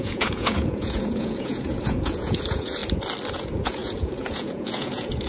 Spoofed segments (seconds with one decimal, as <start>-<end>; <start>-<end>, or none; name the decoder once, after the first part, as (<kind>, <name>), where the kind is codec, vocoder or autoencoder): 0.0-2.8 (vocoder, Vocos); 3.3-5.3

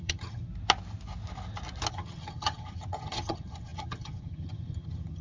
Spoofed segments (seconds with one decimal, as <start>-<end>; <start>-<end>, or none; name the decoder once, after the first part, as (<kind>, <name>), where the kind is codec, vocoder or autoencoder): 0.0-0.5 (vocoder, HiFi-GAN); 1.9-5.2

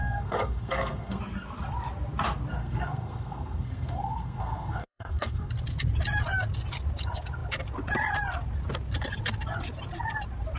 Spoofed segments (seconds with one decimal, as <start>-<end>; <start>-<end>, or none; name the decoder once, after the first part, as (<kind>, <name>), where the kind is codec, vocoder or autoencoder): 0.0-1.2 (codec, SNAC); 2.6-5.5